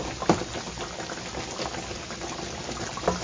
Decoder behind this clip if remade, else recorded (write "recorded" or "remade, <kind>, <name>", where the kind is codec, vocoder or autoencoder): recorded